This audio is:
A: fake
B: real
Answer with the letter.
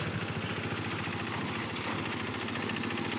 B